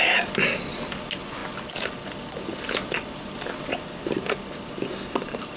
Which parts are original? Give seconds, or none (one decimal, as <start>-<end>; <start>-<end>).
0.0-5.6

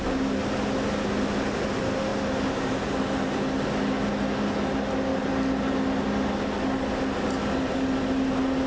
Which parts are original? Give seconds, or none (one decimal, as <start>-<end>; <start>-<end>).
0.0-8.7